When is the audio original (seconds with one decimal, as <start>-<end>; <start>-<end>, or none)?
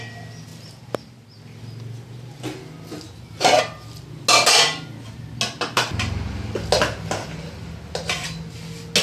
0.0-9.0